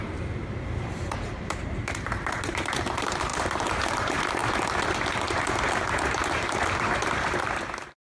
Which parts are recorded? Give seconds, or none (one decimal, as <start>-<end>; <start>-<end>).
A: 4.4-6.1